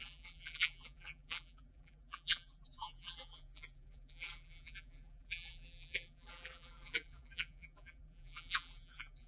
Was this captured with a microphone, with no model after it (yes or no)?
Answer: no